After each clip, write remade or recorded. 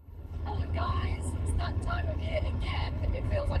remade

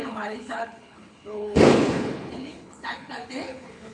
remade